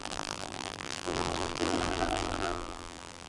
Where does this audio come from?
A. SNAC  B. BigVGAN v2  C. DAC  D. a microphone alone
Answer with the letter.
B